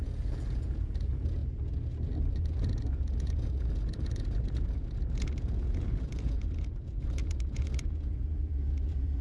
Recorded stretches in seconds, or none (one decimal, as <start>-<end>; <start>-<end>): 1.4-2.3